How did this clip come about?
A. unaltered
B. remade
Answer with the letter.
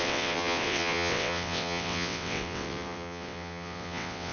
B